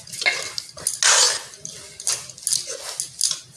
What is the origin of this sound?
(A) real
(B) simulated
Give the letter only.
A